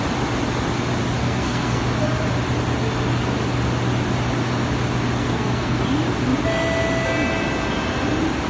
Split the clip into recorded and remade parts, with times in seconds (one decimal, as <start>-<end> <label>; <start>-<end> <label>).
0.0-1.2 recorded; 1.2-1.8 remade; 1.8-5.2 recorded; 5.2-5.8 remade; 5.8-8.5 recorded